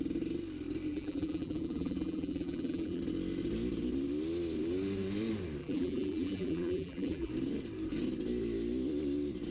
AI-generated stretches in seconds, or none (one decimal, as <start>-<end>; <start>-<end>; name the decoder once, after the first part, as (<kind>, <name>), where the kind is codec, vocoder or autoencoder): 0.9-3.0 (vocoder, BigVGAN v2); 5.6-7.3